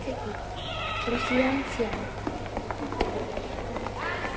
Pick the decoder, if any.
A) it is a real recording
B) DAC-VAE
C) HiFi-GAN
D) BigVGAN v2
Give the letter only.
A